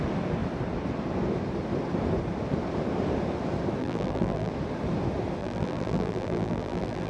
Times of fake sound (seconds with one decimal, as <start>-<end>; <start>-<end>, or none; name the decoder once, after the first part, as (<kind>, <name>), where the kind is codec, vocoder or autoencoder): 3.8-4.5 (vocoder, BigVGAN v2); 5.4-7.1